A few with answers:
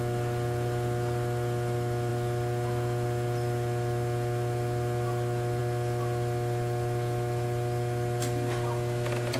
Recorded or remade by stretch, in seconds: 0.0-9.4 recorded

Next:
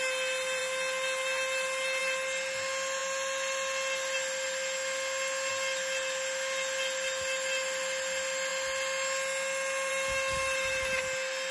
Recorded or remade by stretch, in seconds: 0.0-11.5 recorded

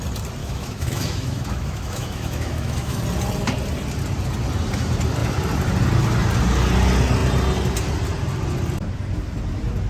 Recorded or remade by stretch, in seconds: 0.0-0.4 recorded; 0.4-3.0 remade; 3.0-9.9 recorded